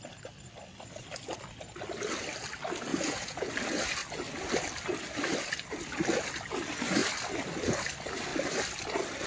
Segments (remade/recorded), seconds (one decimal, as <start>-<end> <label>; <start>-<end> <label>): 0.0-2.9 recorded; 2.9-3.5 remade; 3.5-9.3 recorded